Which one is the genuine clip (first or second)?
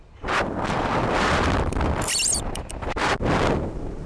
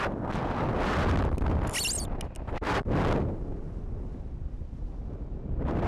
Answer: second